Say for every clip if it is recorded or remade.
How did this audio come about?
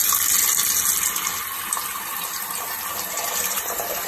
recorded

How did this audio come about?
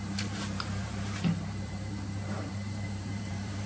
remade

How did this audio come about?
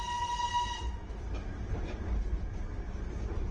recorded